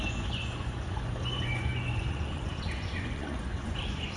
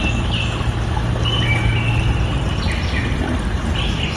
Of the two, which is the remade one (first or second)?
first